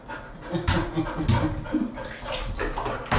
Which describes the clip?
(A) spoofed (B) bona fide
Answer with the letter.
B